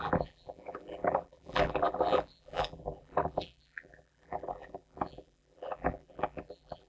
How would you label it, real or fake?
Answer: fake